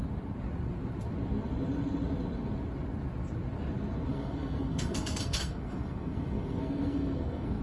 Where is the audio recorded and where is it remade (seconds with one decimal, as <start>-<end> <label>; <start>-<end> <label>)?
0.0-4.1 recorded; 4.1-7.6 remade